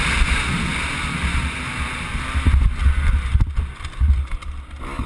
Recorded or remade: recorded